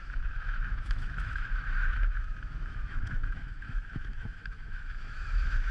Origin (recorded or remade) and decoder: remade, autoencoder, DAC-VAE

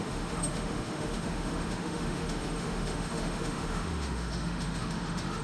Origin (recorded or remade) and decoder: remade, autoencoder, DAC-VAE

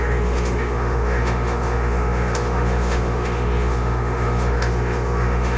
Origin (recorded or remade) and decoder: remade, autoencoder, DAC-VAE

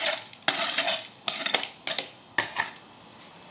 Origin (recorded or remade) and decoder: recorded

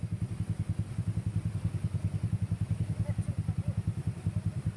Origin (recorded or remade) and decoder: recorded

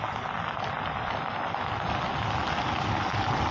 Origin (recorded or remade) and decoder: recorded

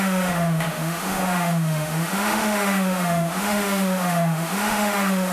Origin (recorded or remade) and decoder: remade, autoencoder, DAC-VAE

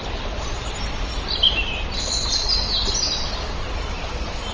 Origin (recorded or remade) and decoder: recorded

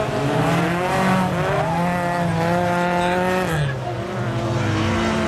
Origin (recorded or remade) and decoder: recorded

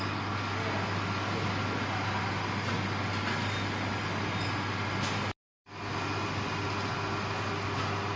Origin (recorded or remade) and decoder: recorded